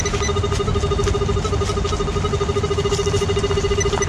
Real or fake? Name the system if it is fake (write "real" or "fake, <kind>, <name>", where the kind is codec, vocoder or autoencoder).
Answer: real